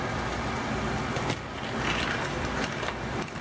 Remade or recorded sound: recorded